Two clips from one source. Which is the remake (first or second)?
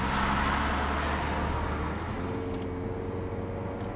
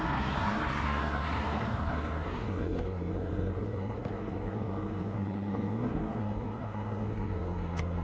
second